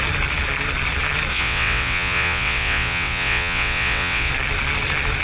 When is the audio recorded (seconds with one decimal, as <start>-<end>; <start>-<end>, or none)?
0.0-1.3; 4.3-5.2

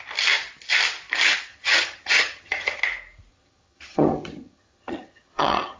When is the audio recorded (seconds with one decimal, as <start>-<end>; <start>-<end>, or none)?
0.0-1.5; 2.8-3.3

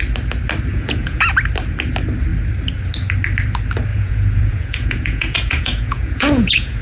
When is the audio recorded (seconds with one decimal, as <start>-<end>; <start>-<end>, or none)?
0.0-0.7; 1.2-3.9

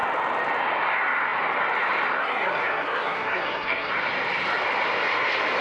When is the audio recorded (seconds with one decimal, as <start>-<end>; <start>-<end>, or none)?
0.0-2.2; 3.9-5.6

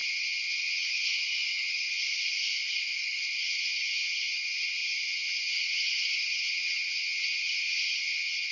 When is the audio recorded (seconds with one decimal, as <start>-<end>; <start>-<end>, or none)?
2.0-3.2

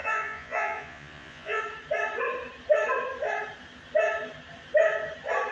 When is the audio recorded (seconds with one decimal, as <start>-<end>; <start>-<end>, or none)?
1.6-5.5

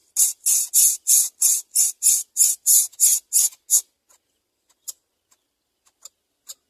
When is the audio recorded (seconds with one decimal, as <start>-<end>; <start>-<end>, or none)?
0.0-6.7